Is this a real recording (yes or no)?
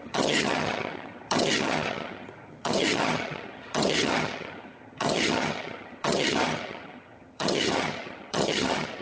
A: no